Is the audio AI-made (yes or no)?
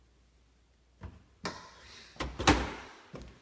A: no